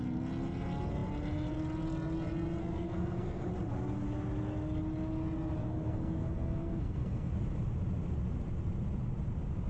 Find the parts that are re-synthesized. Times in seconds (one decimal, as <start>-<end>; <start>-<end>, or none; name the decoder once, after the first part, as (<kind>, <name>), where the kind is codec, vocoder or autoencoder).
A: 2.6-3.5 (codec, SNAC); 5.6-7.3